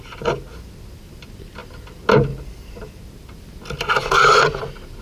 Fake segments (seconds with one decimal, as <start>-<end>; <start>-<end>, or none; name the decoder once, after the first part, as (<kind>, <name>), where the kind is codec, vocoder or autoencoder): none